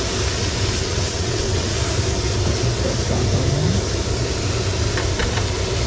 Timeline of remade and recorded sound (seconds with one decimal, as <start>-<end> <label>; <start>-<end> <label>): 0.0-0.8 recorded; 0.8-1.7 remade; 1.7-5.9 recorded